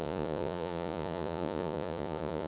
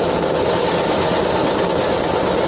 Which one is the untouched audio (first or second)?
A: second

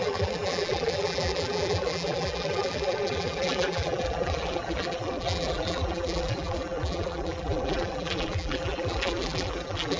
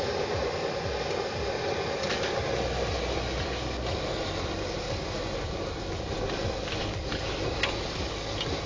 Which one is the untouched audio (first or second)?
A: second